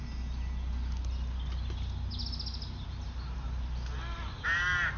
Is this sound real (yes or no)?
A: yes